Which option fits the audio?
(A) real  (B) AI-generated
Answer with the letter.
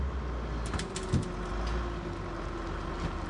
A